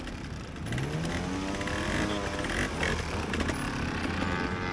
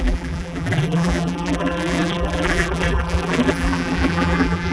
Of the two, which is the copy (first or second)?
second